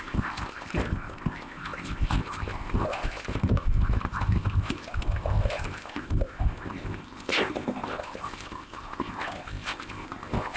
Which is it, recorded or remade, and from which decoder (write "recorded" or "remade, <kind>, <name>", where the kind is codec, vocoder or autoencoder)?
remade, codec, ZipCodec